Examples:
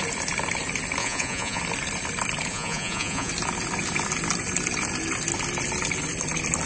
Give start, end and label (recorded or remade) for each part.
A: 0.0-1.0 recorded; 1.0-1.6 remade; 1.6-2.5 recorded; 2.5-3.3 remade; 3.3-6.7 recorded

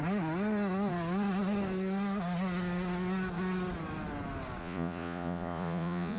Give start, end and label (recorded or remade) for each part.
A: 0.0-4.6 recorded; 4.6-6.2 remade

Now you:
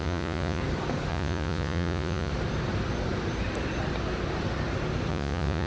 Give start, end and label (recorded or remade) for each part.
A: 0.0-0.6 remade; 0.6-1.1 recorded; 1.1-2.3 remade; 2.3-5.1 recorded; 5.1-5.7 remade